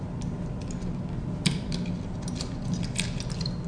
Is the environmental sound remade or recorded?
recorded